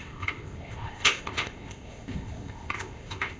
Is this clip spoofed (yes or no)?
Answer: yes